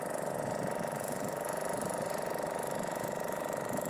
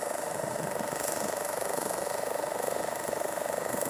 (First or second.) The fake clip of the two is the second